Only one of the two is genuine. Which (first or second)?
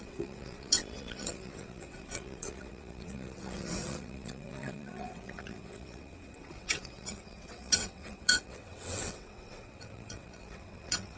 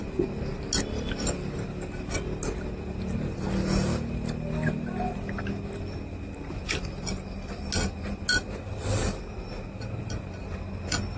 second